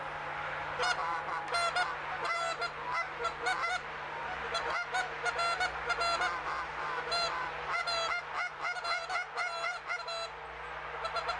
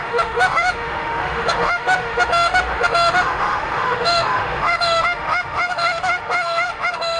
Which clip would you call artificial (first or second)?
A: second